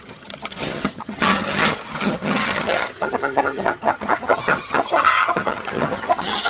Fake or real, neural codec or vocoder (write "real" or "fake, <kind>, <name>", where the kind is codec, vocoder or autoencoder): fake, vocoder, HiFi-GAN